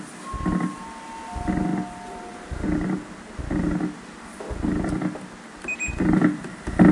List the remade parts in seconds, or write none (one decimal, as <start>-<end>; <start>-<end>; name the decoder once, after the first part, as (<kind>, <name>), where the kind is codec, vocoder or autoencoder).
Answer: none